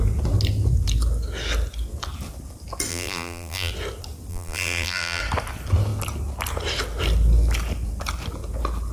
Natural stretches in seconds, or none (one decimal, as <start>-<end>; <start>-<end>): 0.0-2.9; 3.7-4.3; 5.2-8.9